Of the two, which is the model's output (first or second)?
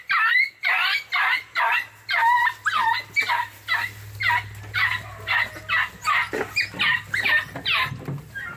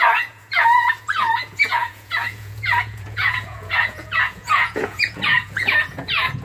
second